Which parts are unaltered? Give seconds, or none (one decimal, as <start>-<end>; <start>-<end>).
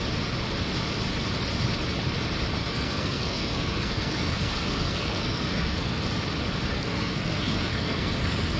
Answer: 0.0-2.6; 6.0-6.7